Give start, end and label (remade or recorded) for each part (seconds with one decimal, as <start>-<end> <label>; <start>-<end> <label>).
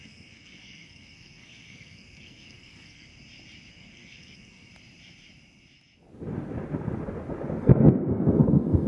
0.0-3.1 remade; 3.1-3.7 recorded; 3.7-4.7 remade; 4.7-7.6 recorded; 7.6-8.9 remade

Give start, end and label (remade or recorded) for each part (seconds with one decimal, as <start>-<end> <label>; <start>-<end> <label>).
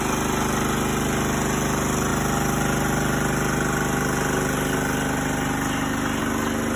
0.0-6.8 recorded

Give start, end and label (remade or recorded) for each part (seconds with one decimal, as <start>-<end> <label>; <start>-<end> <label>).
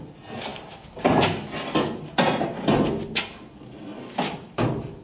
0.0-5.0 recorded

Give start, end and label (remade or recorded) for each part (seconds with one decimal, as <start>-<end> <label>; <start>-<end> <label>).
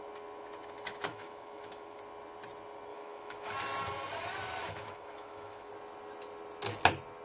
0.0-1.1 recorded; 1.1-2.0 remade; 2.0-2.9 recorded; 2.9-3.5 remade; 3.5-4.6 recorded; 4.6-5.7 remade; 5.7-7.2 recorded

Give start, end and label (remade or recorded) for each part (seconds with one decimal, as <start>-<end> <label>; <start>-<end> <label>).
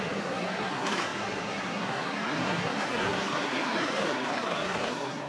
0.0-5.3 remade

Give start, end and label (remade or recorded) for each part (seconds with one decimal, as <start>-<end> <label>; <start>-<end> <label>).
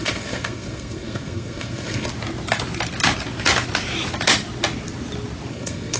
0.0-2.1 remade; 2.1-5.5 recorded; 5.5-6.0 remade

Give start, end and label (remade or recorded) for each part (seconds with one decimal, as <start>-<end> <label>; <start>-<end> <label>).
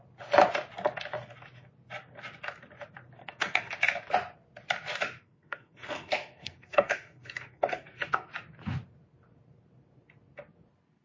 0.0-3.2 recorded; 3.2-3.7 remade; 3.7-5.2 recorded; 5.2-8.3 remade; 8.3-11.0 recorded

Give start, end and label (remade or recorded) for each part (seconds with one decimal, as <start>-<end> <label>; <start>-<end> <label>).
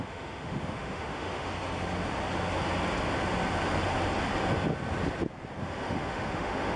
0.0-1.5 remade; 1.5-5.6 recorded; 5.6-6.8 remade